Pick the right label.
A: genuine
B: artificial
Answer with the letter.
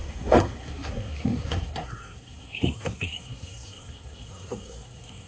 B